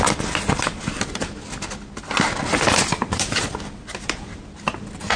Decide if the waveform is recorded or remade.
recorded